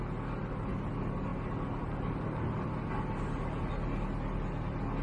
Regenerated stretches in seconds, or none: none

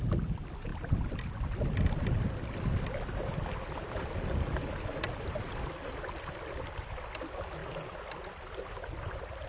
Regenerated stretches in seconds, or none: none

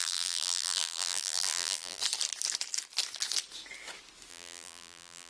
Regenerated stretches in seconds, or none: 0.0-2.0 (vocoder, BigVGAN v2); 4.3-5.3

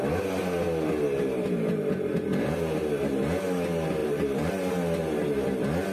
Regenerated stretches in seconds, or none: 4.0-4.5 (vocoder, BigVGAN v2)

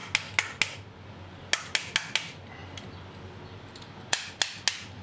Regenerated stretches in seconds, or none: none

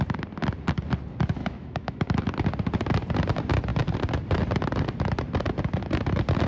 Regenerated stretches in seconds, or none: 1.4-2.3 (autoencoder, DAC-VAE)